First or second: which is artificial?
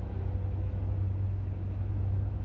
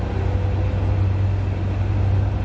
first